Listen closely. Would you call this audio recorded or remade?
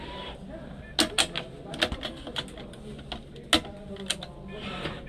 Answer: recorded